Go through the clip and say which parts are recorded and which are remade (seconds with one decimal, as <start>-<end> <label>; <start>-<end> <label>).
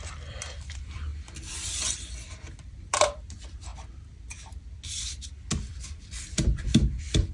0.0-1.1 remade; 1.1-2.3 recorded; 2.3-3.7 remade; 3.7-5.7 recorded; 5.7-7.3 remade